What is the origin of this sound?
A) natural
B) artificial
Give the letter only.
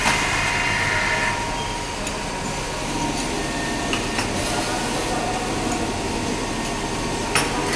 A